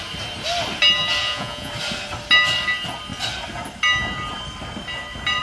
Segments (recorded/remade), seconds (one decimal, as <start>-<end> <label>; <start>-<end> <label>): 0.0-1.2 recorded; 1.2-1.7 remade; 1.7-5.4 recorded